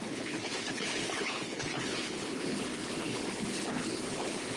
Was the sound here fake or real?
fake